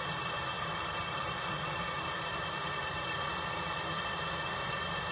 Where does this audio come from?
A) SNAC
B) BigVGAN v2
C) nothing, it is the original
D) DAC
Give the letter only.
B